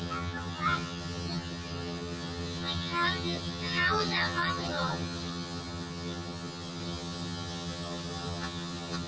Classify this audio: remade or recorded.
remade